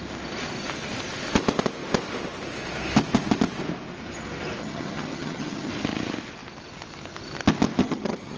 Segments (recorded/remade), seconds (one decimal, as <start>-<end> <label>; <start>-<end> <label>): 0.0-4.6 recorded; 4.6-5.7 remade; 5.7-7.8 recorded; 7.8-8.4 remade